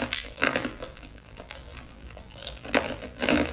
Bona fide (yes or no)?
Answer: no